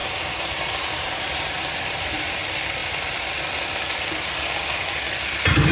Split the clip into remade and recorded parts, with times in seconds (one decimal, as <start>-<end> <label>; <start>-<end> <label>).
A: 0.0-2.4 remade; 2.4-5.7 recorded